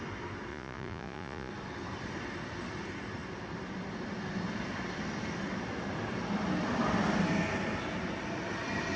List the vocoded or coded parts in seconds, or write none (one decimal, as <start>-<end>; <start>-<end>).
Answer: 0.5-1.5